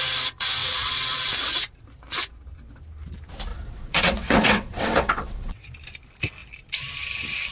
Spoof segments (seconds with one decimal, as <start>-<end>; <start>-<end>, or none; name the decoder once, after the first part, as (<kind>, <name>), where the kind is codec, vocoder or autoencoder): 0.6-1.2 (vocoder, WaveNeXt); 3.5-5.7